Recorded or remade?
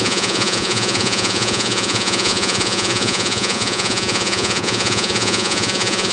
remade